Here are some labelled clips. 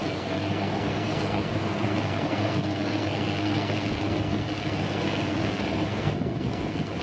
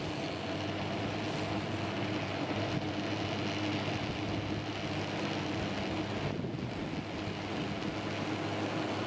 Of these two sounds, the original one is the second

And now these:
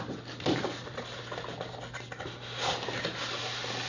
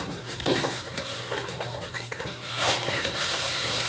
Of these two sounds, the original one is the first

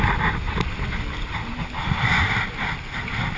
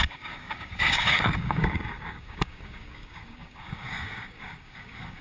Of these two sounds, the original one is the first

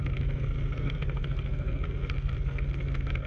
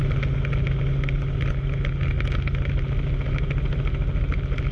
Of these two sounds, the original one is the second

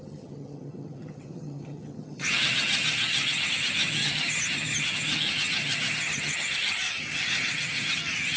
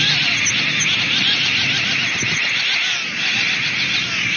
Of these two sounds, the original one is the second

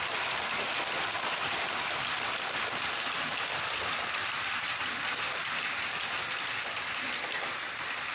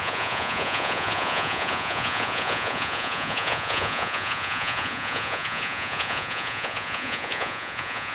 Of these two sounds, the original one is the first